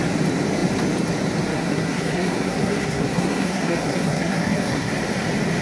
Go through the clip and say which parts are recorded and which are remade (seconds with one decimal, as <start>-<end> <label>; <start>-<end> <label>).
0.0-1.5 recorded; 1.5-4.9 remade; 4.9-5.6 recorded